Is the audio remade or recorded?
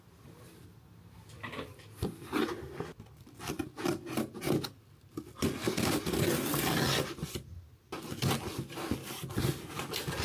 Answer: recorded